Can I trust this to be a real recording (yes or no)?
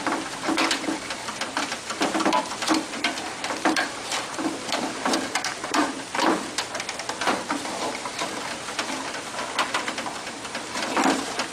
no